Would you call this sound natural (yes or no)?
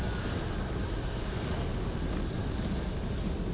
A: yes